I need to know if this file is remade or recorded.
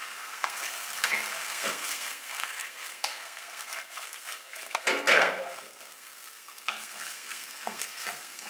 remade